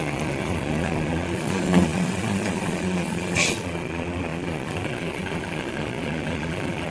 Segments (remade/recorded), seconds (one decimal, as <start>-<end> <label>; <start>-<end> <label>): 0.0-6.9 remade